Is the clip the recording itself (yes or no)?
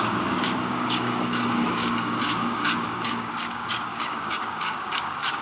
no